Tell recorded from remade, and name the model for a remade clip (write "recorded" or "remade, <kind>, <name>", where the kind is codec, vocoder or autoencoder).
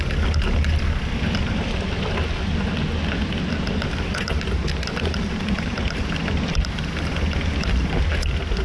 recorded